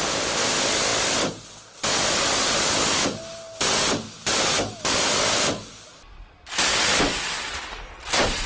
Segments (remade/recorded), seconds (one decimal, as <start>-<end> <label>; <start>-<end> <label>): 0.0-8.5 recorded